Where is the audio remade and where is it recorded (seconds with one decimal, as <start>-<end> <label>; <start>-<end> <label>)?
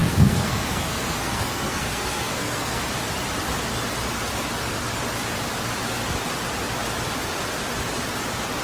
0.0-2.8 remade; 2.8-8.6 recorded